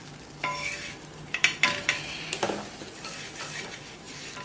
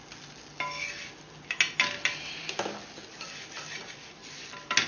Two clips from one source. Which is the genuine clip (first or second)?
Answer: second